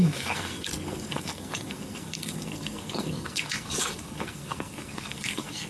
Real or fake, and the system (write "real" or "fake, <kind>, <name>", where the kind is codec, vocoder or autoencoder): fake, codec, SNAC